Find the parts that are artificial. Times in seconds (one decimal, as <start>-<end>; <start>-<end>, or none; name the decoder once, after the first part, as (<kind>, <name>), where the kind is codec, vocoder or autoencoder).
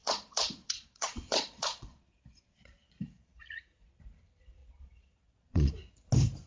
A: 0.0-3.9 (vocoder, Vocos); 4.6-5.7